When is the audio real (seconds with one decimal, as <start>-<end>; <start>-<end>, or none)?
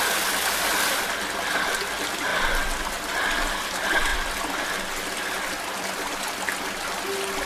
0.0-7.5